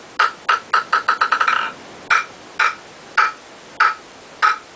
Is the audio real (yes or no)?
yes